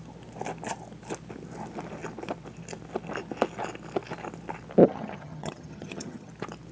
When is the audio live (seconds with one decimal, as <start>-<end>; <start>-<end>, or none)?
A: 0.0-4.8; 6.3-6.7